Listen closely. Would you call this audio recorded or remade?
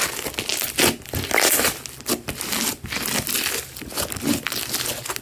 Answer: recorded